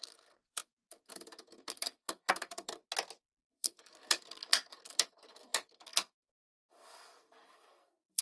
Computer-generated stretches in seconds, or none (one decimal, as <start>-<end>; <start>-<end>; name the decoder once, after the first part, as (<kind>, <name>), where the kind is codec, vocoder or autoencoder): 0.0-2.8 (codec, SNAC); 3.5-8.2